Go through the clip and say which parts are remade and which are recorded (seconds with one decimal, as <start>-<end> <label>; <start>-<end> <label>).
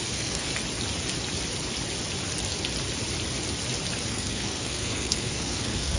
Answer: 0.0-0.5 remade; 0.5-4.1 recorded; 4.1-6.0 remade